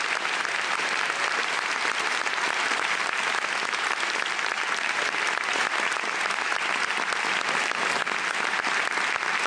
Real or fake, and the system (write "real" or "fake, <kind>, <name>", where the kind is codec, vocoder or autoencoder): real